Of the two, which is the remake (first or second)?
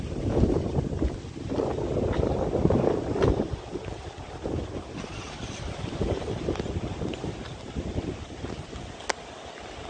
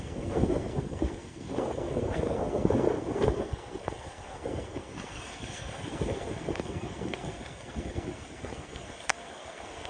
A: second